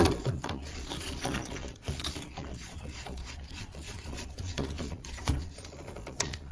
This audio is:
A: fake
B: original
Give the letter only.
A